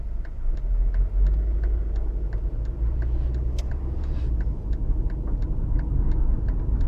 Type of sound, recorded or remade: recorded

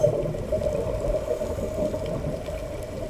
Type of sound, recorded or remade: remade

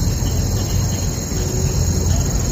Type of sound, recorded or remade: recorded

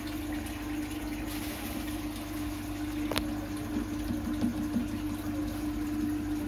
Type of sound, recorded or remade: recorded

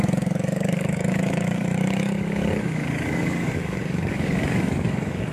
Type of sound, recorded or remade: remade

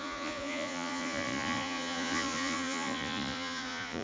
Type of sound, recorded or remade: remade